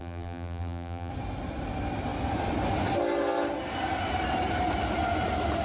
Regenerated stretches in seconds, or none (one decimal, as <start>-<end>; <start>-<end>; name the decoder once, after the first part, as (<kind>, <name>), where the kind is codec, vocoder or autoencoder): 0.0-1.1 (vocoder, BigVGAN v2)